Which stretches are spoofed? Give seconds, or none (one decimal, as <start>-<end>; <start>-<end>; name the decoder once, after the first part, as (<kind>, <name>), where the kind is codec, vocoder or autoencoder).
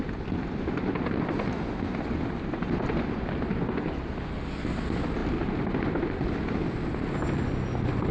none